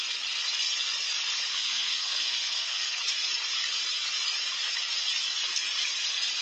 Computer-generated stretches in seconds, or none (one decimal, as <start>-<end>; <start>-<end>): 1.5-3.0